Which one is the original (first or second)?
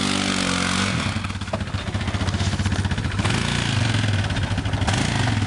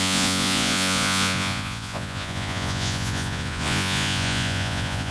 first